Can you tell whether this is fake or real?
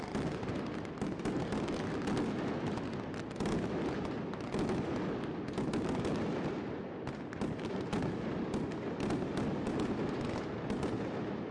real